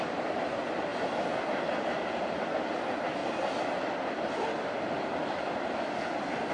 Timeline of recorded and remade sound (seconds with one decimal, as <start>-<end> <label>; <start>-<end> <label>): 0.0-3.2 recorded; 3.2-3.8 remade; 3.8-6.5 recorded